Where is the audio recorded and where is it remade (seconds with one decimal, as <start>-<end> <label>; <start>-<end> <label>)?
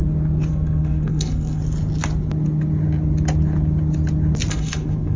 0.0-0.5 recorded; 0.5-1.6 remade; 1.6-4.5 recorded; 4.5-5.2 remade